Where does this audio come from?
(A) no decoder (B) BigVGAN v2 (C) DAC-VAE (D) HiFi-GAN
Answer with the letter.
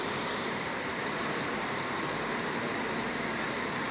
B